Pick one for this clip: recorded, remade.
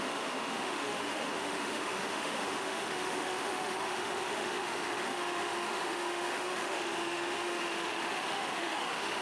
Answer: remade